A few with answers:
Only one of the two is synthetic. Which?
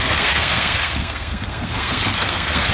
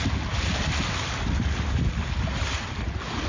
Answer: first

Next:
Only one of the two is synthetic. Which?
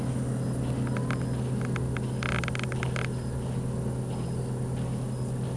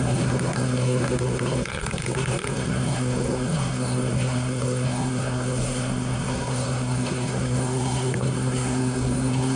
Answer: second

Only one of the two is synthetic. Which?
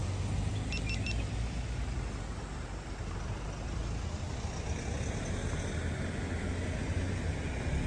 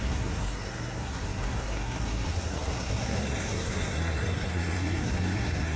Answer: second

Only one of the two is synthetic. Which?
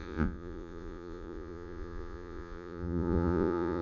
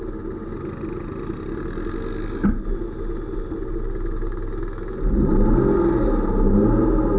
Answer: first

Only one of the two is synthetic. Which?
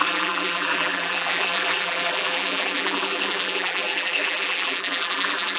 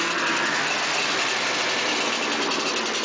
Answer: first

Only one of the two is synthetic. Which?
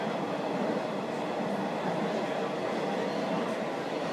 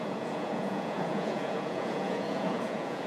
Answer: second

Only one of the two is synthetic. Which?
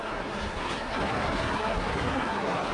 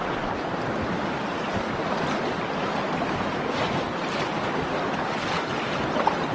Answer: first